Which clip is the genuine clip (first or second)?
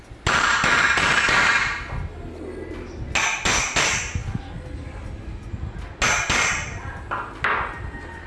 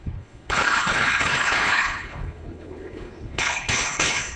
first